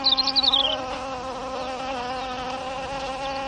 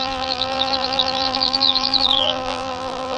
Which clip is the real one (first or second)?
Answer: first